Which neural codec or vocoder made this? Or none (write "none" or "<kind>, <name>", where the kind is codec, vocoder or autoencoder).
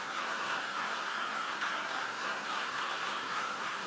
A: codec, SNAC